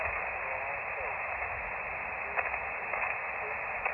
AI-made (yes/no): no